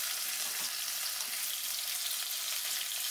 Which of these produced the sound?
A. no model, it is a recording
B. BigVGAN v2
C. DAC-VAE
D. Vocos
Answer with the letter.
A